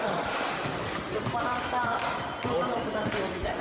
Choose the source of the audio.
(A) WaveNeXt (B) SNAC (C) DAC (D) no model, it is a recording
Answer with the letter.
D